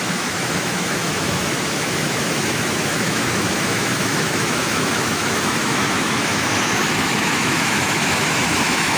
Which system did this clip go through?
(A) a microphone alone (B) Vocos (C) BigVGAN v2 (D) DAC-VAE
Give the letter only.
D